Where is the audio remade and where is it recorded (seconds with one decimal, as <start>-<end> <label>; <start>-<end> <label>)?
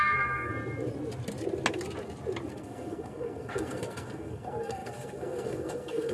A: 0.0-0.5 remade; 0.5-2.5 recorded; 2.5-6.1 remade